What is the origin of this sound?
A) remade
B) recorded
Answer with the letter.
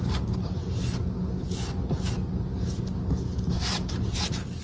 B